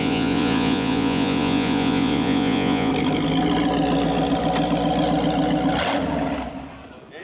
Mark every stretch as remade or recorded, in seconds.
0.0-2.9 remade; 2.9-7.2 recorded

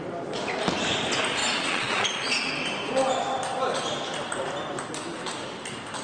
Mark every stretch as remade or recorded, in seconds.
0.0-1.4 recorded; 1.4-2.5 remade; 2.5-6.0 recorded

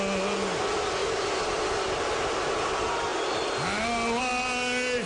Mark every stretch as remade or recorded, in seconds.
0.0-5.1 recorded

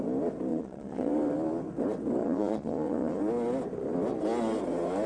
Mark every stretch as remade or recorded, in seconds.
0.0-0.5 recorded; 0.5-1.1 remade; 1.1-2.2 recorded; 2.2-3.2 remade; 3.2-5.1 recorded